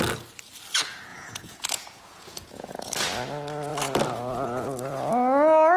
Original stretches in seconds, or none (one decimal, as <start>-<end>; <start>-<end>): 0.0-1.1; 2.9-5.8